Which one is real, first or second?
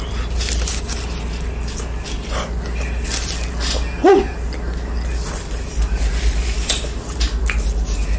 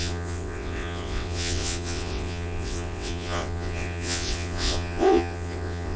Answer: first